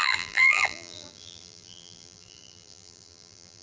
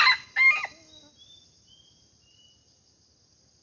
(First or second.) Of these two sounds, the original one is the second